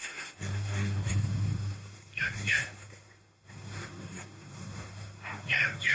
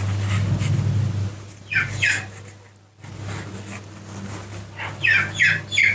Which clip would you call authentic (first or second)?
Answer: second